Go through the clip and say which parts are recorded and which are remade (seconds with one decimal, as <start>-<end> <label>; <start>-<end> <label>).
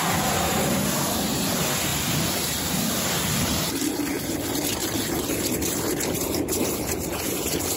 0.0-1.9 recorded; 1.9-2.9 remade; 2.9-7.8 recorded